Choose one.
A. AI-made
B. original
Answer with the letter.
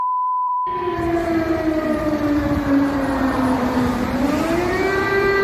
A